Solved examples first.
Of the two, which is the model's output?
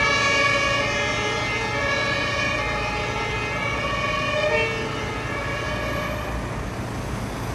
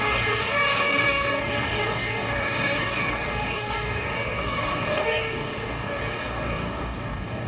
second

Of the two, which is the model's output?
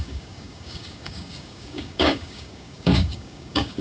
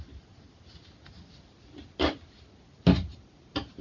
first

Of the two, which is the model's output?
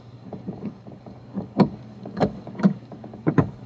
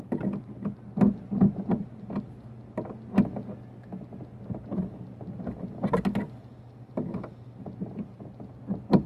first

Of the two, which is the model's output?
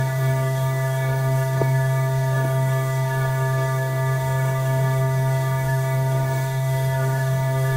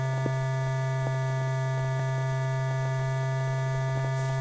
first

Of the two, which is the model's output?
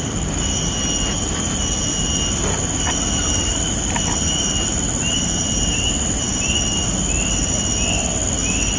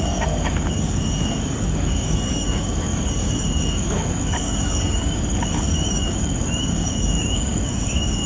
second